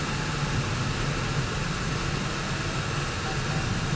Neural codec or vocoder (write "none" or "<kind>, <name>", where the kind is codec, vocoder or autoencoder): none